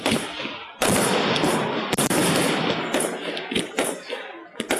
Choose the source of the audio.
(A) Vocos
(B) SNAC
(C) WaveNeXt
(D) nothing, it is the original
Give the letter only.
D